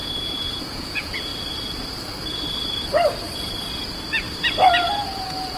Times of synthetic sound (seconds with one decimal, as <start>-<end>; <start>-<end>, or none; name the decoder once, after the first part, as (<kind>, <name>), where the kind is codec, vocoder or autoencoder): 0.0-1.3 (vocoder, Vocos); 4.7-5.6